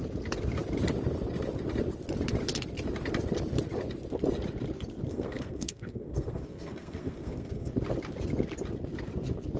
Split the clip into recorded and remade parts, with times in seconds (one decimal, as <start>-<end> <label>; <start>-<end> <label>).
0.0-5.1 recorded; 5.1-7.7 remade; 7.7-9.6 recorded